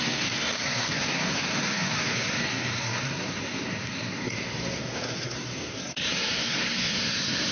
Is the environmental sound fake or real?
fake